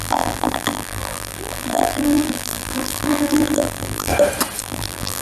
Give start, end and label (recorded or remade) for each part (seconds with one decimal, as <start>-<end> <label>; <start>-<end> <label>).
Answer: 0.0-4.1 remade; 4.1-4.6 recorded; 4.6-5.2 remade